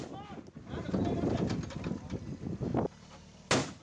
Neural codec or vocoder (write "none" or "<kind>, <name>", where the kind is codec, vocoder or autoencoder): none